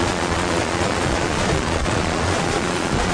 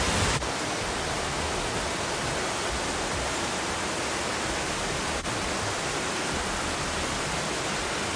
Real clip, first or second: second